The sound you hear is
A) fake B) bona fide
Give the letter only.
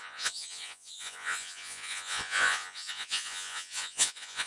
A